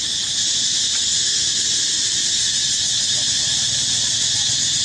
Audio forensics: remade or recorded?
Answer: recorded